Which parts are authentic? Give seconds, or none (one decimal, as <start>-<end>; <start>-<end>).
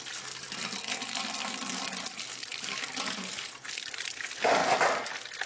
0.0-5.5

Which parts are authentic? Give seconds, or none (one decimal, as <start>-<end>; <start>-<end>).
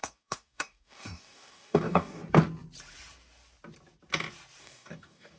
2.2-4.6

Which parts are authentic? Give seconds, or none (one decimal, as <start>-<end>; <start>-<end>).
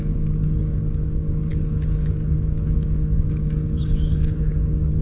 none